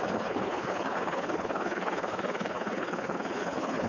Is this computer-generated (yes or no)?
yes